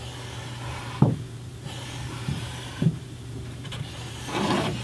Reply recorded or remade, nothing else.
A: remade